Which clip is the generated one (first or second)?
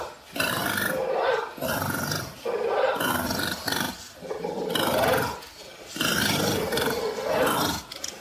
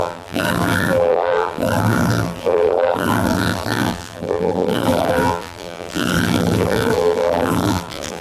second